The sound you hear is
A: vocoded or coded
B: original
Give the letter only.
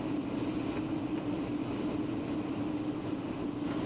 B